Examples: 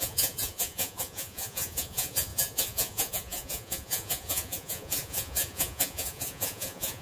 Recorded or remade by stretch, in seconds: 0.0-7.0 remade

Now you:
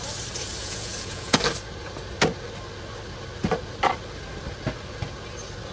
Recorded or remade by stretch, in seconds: 0.0-0.6 recorded; 0.6-1.4 remade; 1.4-5.7 recorded

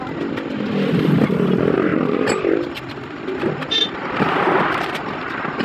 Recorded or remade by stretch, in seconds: 0.0-5.6 recorded